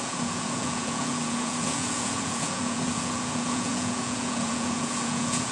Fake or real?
fake